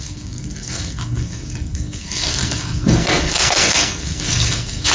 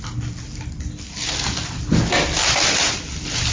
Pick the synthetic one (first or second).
first